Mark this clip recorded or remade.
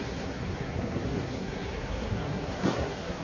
remade